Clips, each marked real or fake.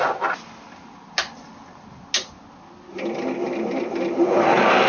real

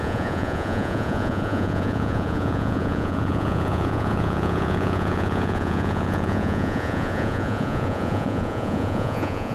fake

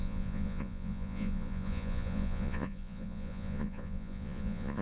fake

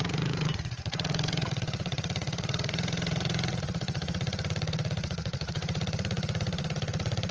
fake